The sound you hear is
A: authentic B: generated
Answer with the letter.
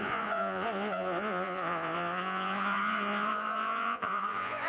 B